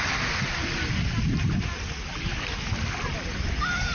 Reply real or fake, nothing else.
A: real